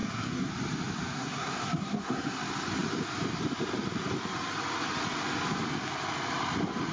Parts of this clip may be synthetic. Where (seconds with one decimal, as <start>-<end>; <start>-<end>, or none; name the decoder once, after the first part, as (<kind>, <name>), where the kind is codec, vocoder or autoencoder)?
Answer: 0.0-0.5 (codec, SNAC); 1.1-2.4